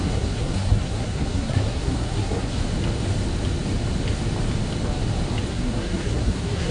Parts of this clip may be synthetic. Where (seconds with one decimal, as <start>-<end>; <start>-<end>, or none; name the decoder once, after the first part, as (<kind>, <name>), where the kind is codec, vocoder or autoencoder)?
0.0-2.6 (codec, SNAC); 5.5-6.7

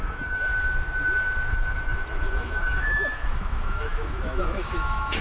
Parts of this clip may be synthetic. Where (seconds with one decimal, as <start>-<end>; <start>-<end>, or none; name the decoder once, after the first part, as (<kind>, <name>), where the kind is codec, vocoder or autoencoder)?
0.0-0.5 (autoencoder, DAC-VAE); 1.5-5.2

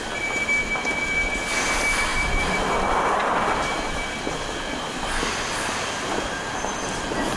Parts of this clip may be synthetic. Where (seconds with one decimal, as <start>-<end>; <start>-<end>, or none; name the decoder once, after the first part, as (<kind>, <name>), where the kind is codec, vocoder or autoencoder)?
2.1-3.9 (vocoder, BigVGAN v2)

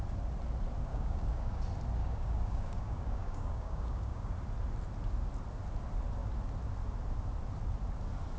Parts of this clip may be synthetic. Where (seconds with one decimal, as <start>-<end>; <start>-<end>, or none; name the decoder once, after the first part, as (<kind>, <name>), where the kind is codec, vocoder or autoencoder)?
0.9-1.6 (codec, DAC); 2.0-4.3

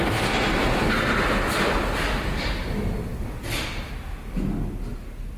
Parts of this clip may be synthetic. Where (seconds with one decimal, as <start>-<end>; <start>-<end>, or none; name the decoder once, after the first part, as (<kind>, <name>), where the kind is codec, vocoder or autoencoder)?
none